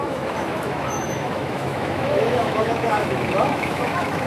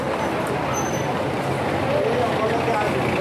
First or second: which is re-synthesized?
first